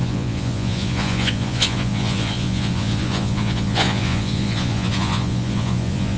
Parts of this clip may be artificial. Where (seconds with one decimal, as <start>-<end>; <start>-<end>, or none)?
0.0-6.2